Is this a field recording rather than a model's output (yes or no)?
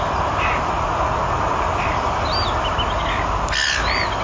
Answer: yes